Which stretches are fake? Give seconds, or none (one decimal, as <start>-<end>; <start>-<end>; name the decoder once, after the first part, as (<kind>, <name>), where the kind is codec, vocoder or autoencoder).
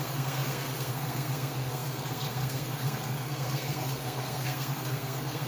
0.0-5.5 (codec, SNAC)